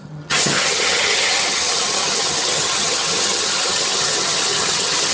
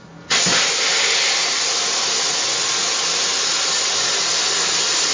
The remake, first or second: first